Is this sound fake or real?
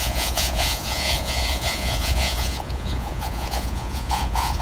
fake